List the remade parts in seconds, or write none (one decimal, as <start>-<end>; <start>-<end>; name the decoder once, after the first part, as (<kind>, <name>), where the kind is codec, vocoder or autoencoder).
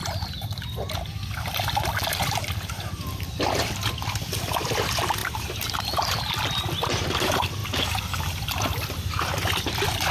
none